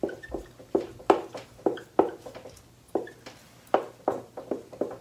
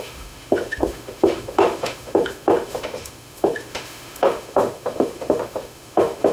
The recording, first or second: first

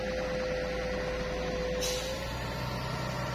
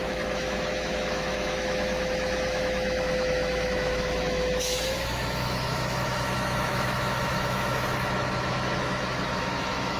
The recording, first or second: first